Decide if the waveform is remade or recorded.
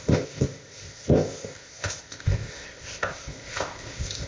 remade